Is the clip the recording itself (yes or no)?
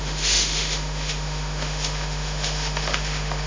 no